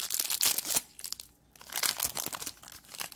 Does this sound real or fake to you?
real